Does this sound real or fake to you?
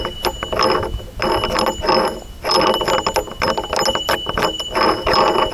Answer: real